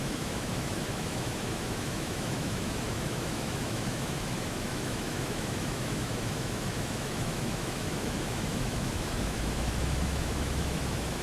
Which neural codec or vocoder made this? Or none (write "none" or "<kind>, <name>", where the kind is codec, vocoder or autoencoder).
autoencoder, DAC-VAE